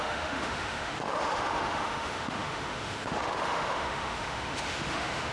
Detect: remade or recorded remade